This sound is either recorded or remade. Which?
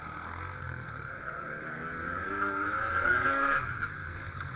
remade